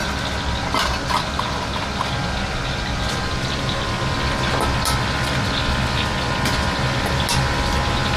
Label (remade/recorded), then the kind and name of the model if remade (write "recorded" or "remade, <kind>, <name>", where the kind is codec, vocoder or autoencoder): recorded